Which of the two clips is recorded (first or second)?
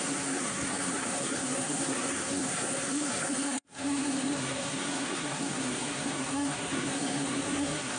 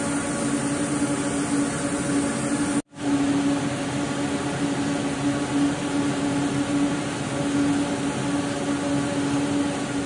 second